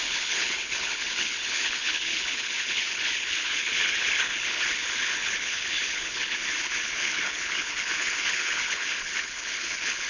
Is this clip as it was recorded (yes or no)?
no